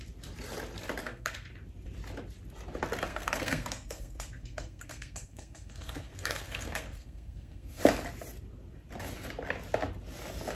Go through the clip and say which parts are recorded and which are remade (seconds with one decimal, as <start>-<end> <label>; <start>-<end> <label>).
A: 0.0-1.0 recorded; 1.0-1.5 remade; 1.5-3.1 recorded; 3.1-7.8 remade; 7.8-10.6 recorded